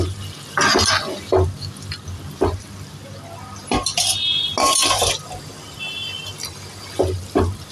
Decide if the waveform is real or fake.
real